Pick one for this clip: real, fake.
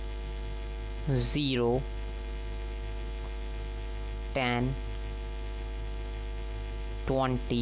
real